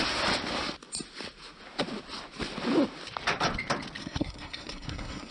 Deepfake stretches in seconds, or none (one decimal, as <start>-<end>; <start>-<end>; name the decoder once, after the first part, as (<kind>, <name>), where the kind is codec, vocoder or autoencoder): 4.0-5.3 (codec, SNAC)